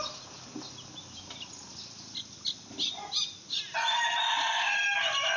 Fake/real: real